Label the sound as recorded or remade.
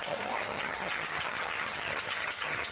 remade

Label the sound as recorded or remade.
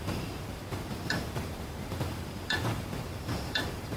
remade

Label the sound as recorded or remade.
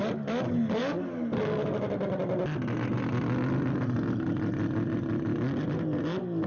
recorded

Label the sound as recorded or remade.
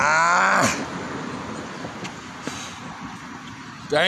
recorded